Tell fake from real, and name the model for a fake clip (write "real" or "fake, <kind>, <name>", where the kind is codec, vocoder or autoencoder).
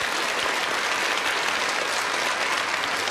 real